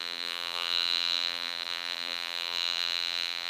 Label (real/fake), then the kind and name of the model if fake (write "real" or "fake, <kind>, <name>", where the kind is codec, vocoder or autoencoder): fake, vocoder, BigVGAN v2